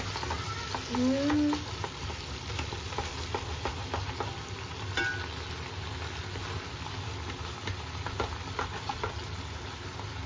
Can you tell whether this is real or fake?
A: real